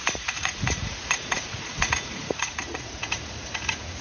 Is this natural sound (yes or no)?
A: no